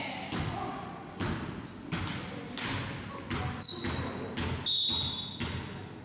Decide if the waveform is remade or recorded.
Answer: recorded